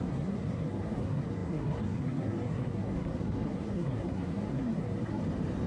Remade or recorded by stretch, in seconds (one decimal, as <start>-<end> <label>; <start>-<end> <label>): 0.0-5.2 remade; 5.2-5.7 recorded